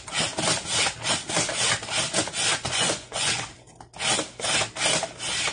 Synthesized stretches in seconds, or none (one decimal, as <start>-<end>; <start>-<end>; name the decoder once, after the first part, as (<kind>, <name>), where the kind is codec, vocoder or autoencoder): 2.5-3.5 (vocoder, Vocos)